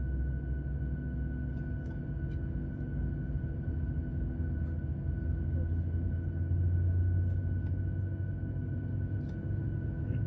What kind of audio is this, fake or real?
real